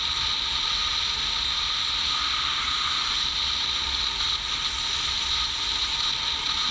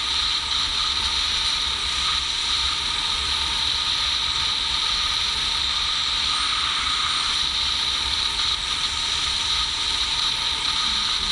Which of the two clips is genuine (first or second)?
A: first